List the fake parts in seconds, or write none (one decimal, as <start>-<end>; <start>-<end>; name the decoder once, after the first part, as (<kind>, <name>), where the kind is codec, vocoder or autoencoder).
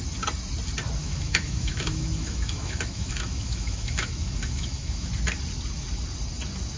1.0-5.1 (autoencoder, DAC-VAE)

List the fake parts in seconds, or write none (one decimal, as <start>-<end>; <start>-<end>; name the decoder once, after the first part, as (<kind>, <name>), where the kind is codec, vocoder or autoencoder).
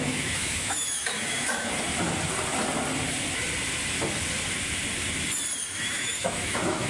0.0-1.7 (autoencoder, DAC-VAE); 5.8-6.9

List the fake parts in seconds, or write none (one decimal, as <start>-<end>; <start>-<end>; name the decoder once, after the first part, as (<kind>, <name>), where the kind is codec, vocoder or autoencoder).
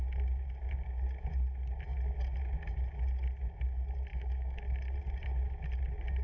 4.1-4.6 (autoencoder, DAC-VAE)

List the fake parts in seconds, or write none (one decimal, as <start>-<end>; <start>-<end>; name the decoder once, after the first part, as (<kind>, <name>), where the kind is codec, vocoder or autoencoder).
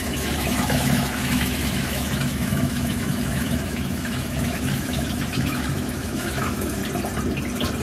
0.0-6.8 (autoencoder, DAC-VAE)